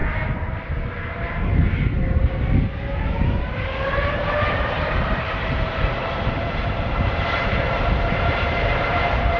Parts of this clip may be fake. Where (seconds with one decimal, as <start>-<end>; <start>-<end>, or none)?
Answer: 3.2-9.4